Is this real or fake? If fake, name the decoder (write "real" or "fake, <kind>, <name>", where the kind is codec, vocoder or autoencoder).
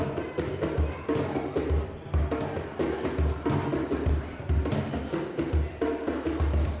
real